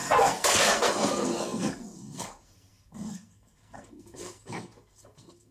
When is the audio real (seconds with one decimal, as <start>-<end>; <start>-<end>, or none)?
none